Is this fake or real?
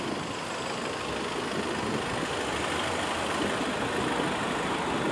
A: real